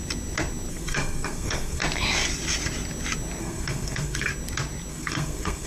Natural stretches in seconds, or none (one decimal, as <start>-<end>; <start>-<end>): 0.0-0.7; 1.8-3.4; 4.3-4.9

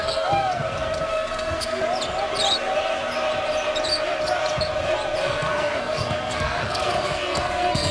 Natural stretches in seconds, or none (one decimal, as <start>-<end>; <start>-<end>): 1.8-5.2

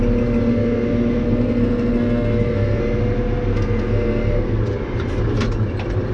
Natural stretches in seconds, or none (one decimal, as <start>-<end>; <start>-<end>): 0.0-0.5; 2.8-3.5; 4.6-6.1

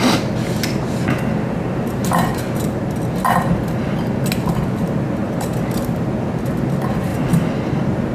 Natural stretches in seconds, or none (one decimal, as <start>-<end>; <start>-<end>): 0.0-8.1

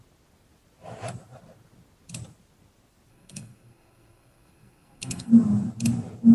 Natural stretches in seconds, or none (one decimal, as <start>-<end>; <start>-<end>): 0.0-3.1; 5.3-6.3

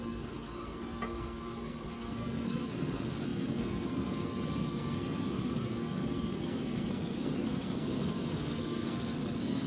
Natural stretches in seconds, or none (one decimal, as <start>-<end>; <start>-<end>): none

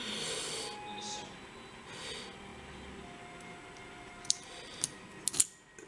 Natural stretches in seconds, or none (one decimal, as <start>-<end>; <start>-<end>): 0.0-5.9